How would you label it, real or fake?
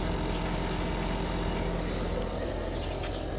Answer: real